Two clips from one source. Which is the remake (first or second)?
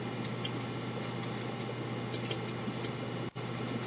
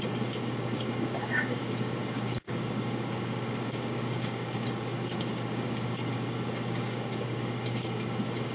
second